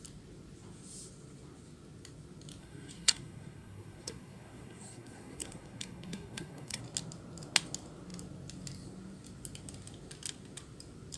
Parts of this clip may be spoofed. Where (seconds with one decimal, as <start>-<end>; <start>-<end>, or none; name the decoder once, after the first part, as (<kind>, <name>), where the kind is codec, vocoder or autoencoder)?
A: 2.6-6.8 (codec, SNAC)